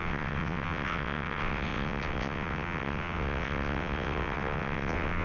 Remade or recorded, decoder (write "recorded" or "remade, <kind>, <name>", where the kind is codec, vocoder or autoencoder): remade, vocoder, WaveNeXt